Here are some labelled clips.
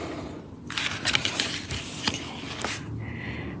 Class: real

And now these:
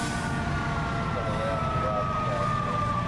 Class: real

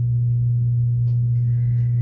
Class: real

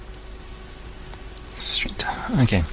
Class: real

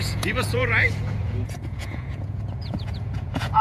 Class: fake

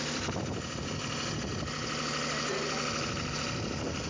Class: real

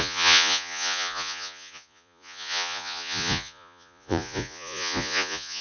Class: fake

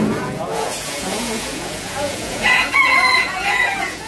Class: fake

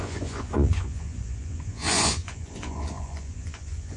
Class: fake